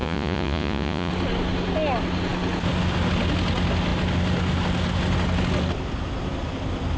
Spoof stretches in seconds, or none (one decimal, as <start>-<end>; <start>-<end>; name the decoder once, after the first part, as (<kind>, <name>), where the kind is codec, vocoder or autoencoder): 0.0-1.1 (vocoder, Vocos)